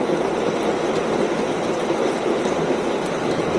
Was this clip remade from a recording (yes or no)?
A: no